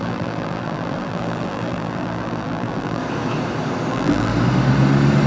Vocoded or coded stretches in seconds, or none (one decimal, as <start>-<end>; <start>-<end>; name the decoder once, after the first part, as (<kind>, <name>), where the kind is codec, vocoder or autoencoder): 0.0-3.0 (vocoder, BigVGAN v2); 3.9-4.3